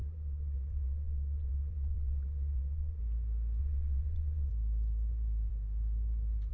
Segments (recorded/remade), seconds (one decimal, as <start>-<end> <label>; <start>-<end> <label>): 0.0-3.0 remade; 3.0-3.6 recorded; 3.6-4.5 remade; 4.5-6.5 recorded